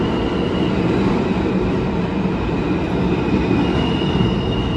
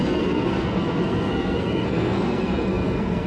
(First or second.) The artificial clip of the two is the second